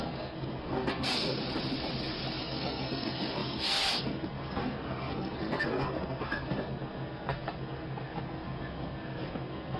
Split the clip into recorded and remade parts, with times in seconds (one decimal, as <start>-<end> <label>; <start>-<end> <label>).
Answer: 0.0-1.4 remade; 1.4-2.4 recorded; 2.4-9.8 remade